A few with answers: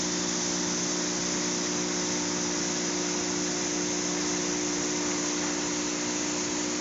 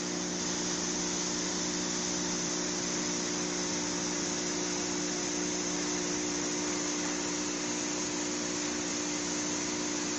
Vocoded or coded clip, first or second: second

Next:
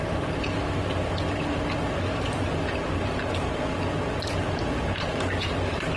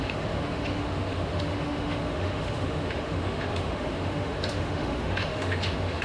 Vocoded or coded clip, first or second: second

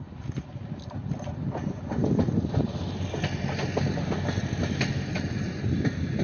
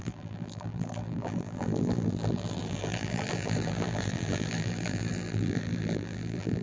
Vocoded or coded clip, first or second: second